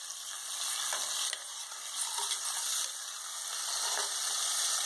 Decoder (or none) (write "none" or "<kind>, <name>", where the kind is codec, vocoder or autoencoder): none